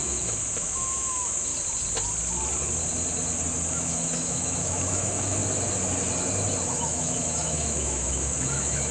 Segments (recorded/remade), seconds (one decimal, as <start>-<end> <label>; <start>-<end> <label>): 0.0-1.5 remade; 1.5-3.7 recorded; 3.7-5.4 remade; 5.4-6.7 recorded; 6.7-8.9 remade